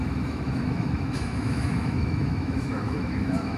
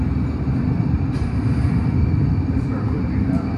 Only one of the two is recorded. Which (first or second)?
second